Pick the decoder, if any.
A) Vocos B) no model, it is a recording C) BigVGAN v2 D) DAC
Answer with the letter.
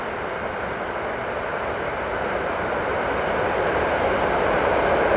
B